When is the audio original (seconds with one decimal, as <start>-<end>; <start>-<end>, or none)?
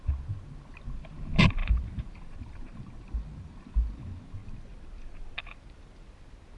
0.0-1.6; 4.0-6.6